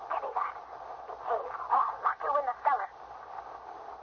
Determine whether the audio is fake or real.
real